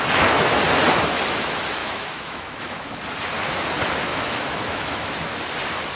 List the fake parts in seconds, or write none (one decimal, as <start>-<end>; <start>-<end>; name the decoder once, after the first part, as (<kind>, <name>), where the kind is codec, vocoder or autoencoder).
1.8-2.9 (autoencoder, DAC-VAE); 4.1-5.4